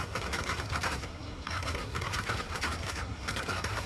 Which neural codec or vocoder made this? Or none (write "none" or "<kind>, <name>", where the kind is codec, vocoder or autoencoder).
codec, SNAC